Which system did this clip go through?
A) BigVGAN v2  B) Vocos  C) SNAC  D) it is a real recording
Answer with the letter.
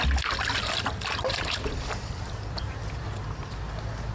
D